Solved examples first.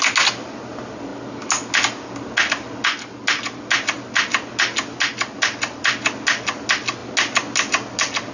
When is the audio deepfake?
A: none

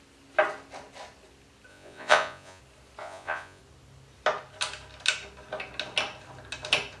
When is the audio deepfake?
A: 1.7-2.6 (vocoder, Vocos); 3.0-3.6

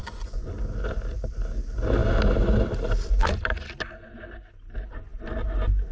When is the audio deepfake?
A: 0.0-0.5 (vocoder, Vocos)

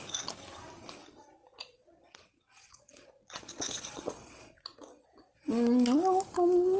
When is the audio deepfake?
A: 1.4-5.5 (vocoder, Vocos)

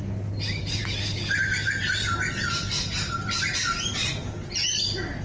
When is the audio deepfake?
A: none

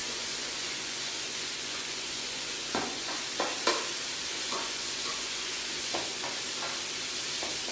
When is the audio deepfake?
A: 0.0-3.2 (vocoder, Vocos); 4.3-6.4

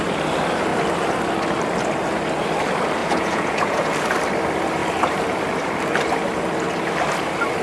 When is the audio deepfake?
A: 3.0-3.9 (vocoder, Vocos)

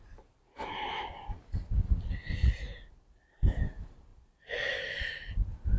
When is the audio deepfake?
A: 2.4-2.9 (vocoder, Vocos)